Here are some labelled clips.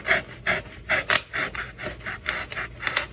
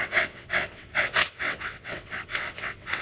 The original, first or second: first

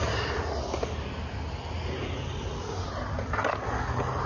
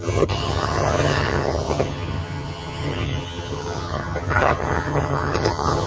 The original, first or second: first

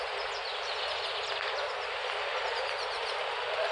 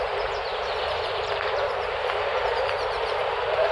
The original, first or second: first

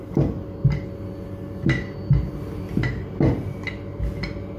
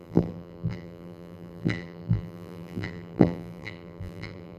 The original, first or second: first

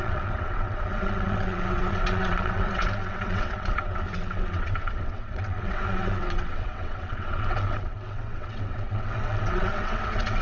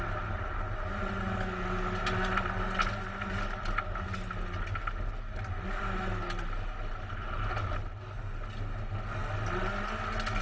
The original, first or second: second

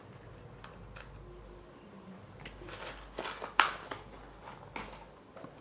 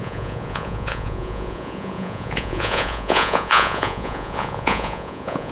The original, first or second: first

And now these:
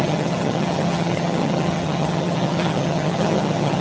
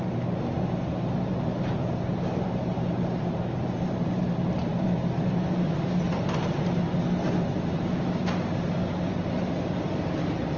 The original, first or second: second